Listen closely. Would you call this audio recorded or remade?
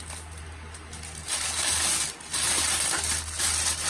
recorded